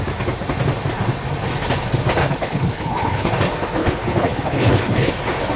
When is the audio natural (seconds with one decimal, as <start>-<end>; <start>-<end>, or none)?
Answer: 0.0-2.2; 3.3-3.8; 5.1-5.6